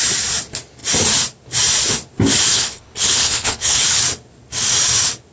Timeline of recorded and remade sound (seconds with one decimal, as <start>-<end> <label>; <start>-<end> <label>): 0.0-2.5 recorded; 2.5-4.0 remade; 4.0-5.3 recorded